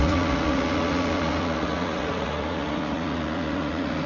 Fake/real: fake